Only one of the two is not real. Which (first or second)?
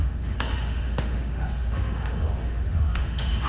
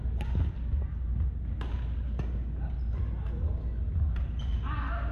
first